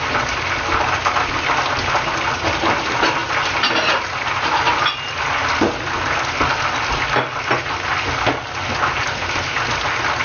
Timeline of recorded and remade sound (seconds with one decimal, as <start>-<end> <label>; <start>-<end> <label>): 0.0-10.2 recorded